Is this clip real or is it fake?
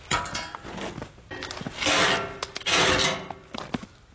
real